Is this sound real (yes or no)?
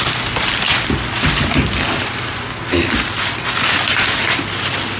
yes